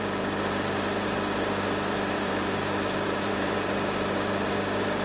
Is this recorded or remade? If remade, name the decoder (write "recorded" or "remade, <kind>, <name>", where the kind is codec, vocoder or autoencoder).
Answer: remade, vocoder, BigVGAN v2